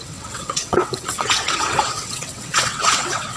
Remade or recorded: remade